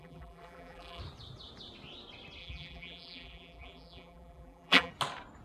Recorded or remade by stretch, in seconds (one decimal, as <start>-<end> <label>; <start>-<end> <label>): 0.0-1.0 remade; 1.0-2.4 recorded; 2.4-4.9 remade; 4.9-5.4 recorded